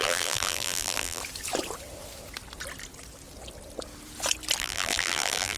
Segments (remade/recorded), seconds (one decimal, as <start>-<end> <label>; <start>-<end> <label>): 0.0-1.2 remade; 1.2-4.6 recorded; 4.6-5.6 remade